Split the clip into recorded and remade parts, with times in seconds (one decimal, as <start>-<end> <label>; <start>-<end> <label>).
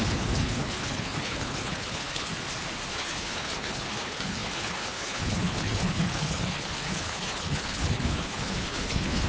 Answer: 0.0-2.3 remade; 2.3-2.9 recorded; 2.9-9.3 remade